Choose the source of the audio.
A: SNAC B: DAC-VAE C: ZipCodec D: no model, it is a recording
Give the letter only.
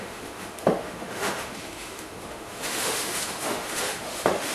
B